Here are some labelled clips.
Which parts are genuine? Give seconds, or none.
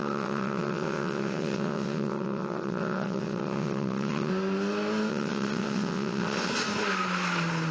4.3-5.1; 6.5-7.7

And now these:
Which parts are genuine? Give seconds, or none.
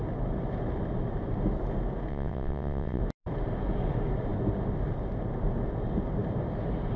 0.0-2.1; 3.0-7.0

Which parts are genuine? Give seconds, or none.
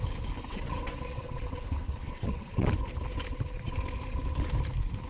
0.0-0.5; 2.7-5.1